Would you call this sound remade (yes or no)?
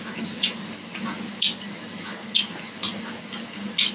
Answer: no